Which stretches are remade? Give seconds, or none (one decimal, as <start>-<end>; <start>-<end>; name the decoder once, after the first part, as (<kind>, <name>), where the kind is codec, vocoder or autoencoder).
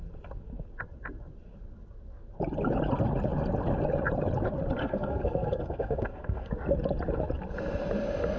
4.8-6.5 (codec, SNAC)